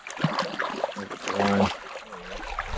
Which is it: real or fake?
real